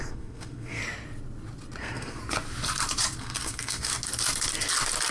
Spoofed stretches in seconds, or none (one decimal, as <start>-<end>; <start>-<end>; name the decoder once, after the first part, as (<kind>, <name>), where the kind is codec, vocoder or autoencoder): 0.0-0.8 (codec, SNAC); 1.8-2.2; 3.2-3.9